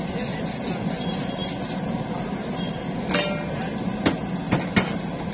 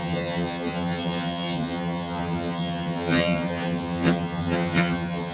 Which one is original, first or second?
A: first